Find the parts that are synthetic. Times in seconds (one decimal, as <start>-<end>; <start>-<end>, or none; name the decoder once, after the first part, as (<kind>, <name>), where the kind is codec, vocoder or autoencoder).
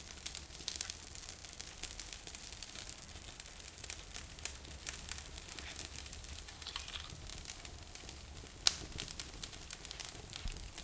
0.0-1.4 (vocoder, BigVGAN v2); 2.2-7.3; 9.2-10.8